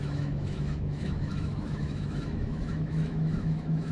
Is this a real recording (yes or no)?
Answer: no